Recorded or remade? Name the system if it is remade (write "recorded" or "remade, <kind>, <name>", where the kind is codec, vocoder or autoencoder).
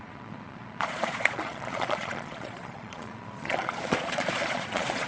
remade, vocoder, Vocos